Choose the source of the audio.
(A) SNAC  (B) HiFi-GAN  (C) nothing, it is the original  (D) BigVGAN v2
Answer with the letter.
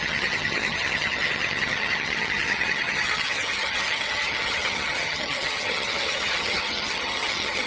B